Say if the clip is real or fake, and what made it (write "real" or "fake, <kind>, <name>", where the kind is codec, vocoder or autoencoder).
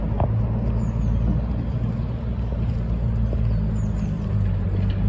real